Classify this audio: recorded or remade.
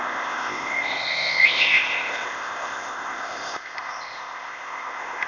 remade